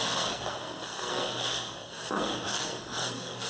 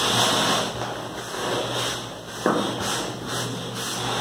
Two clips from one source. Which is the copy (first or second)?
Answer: first